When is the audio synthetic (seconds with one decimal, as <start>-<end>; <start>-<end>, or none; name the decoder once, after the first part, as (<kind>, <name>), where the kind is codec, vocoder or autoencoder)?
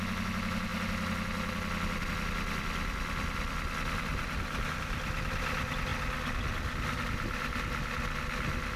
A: none